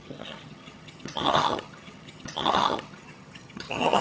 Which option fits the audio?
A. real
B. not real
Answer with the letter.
B